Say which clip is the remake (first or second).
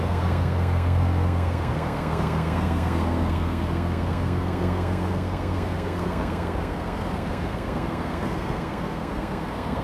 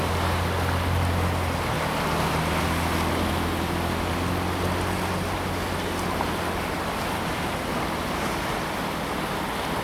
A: first